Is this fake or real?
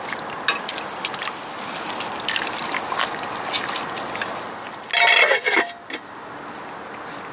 real